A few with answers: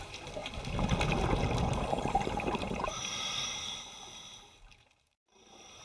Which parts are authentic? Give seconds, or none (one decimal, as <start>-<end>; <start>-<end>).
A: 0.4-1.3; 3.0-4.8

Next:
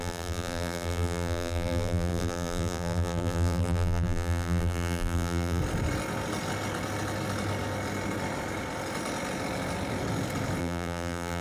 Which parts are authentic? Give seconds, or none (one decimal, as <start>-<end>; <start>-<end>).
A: 5.6-10.6

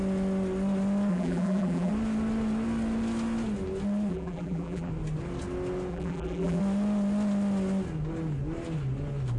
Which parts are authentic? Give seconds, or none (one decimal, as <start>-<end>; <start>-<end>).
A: 0.0-1.1; 1.9-4.1; 4.9-5.9; 6.6-9.4

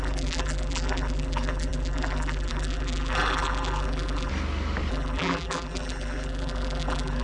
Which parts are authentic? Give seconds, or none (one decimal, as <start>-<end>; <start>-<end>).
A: 4.3-4.9

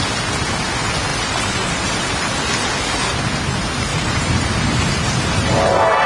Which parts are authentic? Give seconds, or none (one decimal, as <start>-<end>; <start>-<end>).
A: 0.0-1.1; 2.6-3.9

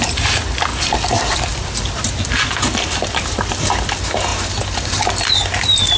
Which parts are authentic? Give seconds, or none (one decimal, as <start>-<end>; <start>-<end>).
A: 0.0-0.7; 3.9-6.0